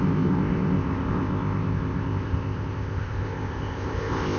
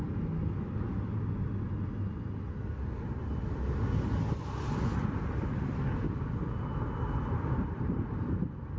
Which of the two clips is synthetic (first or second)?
first